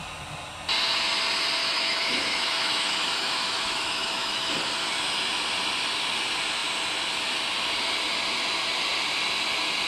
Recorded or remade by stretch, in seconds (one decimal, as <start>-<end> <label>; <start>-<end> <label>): 0.0-1.6 recorded; 1.6-4.5 remade; 4.5-9.9 recorded